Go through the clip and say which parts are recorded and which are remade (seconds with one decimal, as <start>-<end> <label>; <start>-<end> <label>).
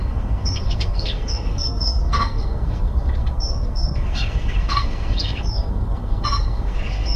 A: 0.0-7.2 remade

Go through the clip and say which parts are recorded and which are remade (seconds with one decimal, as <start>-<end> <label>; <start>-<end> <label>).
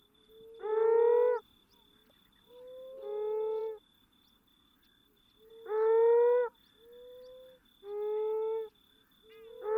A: 0.0-9.8 recorded